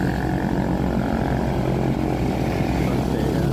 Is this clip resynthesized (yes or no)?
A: no